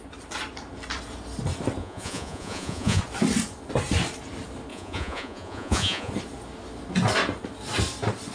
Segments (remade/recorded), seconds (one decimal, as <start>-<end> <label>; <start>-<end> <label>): 0.0-1.8 recorded; 1.8-3.0 remade; 3.0-4.7 recorded; 4.7-6.1 remade; 6.1-8.3 recorded